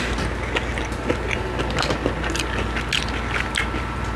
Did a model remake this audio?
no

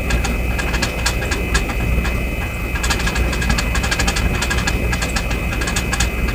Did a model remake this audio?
no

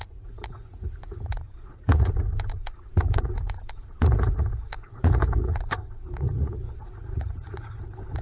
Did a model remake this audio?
yes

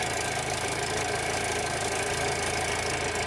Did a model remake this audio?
no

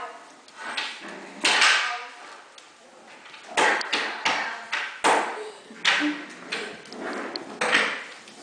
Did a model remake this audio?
no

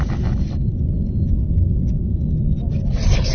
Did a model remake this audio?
no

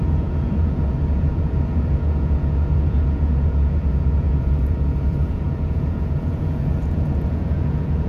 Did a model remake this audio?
yes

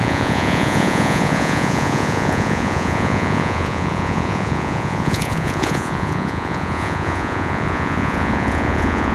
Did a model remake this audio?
yes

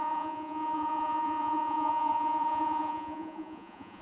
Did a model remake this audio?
yes